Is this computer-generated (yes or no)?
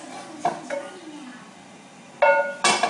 no